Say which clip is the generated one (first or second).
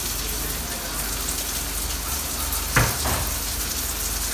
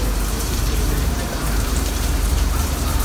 second